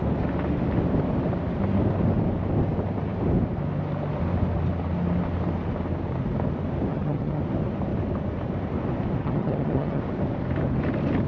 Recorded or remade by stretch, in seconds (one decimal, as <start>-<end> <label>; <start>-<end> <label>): 0.0-6.9 recorded; 6.9-7.4 remade; 7.4-9.2 recorded; 9.2-10.0 remade; 10.0-11.3 recorded